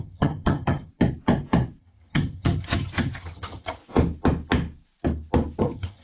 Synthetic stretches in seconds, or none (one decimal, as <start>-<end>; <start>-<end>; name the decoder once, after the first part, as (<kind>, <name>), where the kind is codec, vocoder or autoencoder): 0.0-0.9 (vocoder, HiFi-GAN); 1.8-3.8; 5.6-6.0